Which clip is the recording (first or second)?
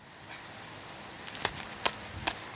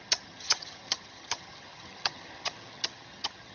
first